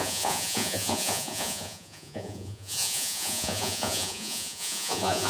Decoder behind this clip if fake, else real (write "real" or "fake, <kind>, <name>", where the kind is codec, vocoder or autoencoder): fake, vocoder, Vocos